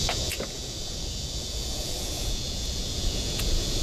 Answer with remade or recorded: remade